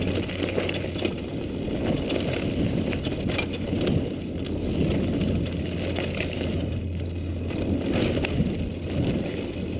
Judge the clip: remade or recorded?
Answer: recorded